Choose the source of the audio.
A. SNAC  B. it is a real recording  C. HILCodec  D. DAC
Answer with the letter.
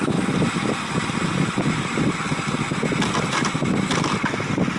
B